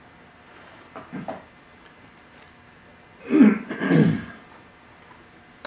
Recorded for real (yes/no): yes